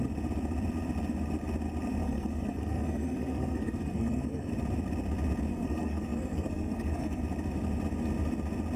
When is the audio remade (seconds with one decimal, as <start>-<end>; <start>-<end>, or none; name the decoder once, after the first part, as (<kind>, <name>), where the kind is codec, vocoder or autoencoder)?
2.0-4.5 (codec, SNAC); 5.5-7.2